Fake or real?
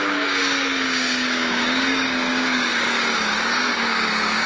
fake